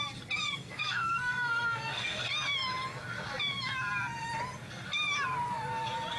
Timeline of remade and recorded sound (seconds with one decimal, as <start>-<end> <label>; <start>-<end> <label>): 0.0-0.4 recorded; 0.4-2.3 remade; 2.3-6.2 recorded